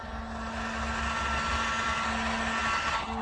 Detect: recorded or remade recorded